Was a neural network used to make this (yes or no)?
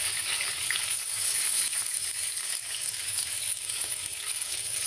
yes